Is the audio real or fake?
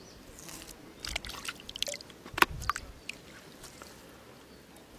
real